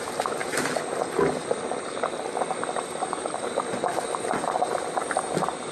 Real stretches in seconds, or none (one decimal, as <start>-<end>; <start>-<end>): 0.0-5.7